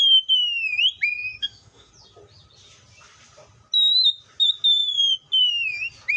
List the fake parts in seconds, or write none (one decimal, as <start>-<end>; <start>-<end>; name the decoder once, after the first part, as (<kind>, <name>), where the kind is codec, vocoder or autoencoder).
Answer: 1.4-1.9 (autoencoder, DAC-VAE)